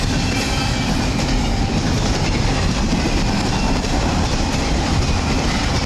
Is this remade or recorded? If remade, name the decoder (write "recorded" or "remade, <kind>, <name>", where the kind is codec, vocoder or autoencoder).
recorded